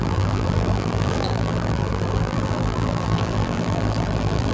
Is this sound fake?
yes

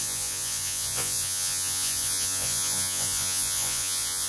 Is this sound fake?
yes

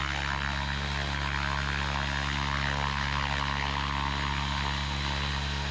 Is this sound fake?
no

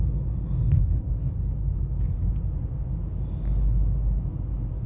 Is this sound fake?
no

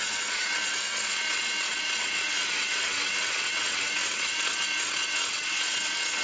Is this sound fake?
yes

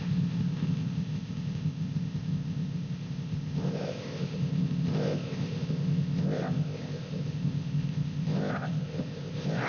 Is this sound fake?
yes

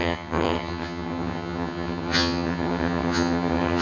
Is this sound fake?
yes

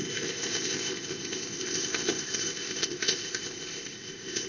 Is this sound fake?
yes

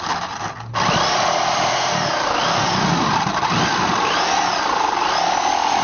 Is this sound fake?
yes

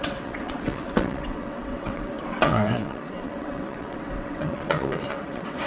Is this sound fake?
yes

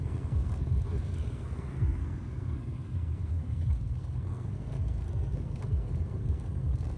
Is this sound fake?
yes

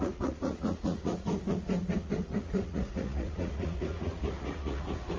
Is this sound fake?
yes